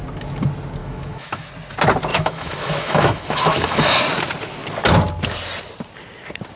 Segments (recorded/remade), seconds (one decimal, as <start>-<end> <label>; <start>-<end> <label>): 0.0-0.8 recorded; 0.8-1.5 remade; 1.5-2.1 recorded; 2.1-4.0 remade; 4.0-6.6 recorded